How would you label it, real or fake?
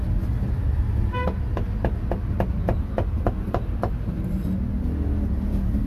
real